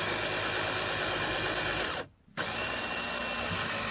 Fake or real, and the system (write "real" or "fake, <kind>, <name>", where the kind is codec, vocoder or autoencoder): real